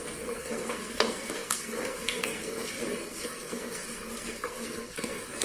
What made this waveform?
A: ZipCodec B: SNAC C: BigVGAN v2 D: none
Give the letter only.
B